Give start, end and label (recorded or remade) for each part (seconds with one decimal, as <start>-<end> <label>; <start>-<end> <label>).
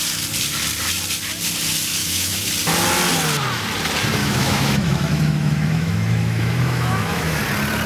0.0-2.0 recorded; 2.0-2.5 remade; 2.5-4.2 recorded; 4.2-7.4 remade; 7.4-7.9 recorded